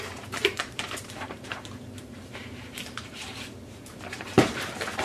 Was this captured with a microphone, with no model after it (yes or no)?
no